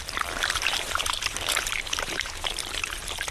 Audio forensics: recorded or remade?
remade